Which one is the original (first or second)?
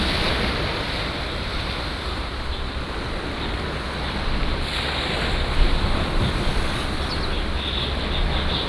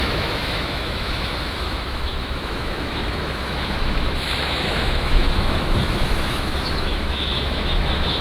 first